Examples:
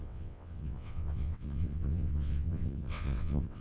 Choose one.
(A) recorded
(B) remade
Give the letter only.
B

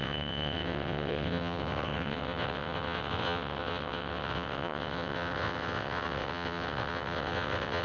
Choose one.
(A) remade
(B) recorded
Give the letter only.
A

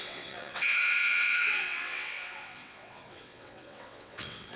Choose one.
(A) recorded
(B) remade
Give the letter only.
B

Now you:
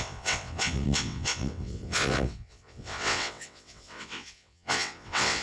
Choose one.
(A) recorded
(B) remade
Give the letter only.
B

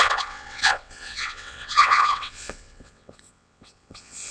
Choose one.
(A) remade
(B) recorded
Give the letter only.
A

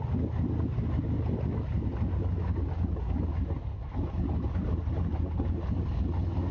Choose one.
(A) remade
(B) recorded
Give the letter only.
B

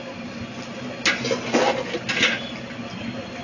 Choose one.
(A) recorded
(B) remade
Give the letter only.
A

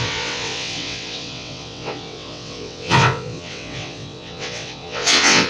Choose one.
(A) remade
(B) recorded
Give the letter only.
A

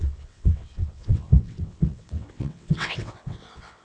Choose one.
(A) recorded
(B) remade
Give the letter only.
B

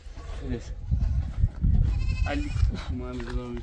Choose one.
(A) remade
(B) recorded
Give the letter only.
B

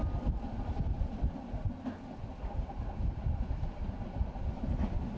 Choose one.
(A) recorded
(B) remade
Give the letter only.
A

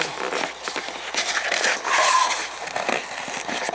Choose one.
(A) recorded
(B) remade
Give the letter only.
A